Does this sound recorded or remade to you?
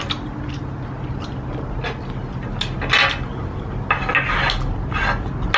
recorded